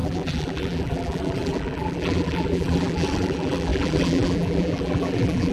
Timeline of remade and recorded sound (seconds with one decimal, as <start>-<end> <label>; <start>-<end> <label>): 0.0-5.5 remade